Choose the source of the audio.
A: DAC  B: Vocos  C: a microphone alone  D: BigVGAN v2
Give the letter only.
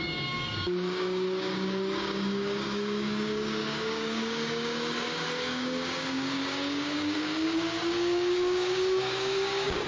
A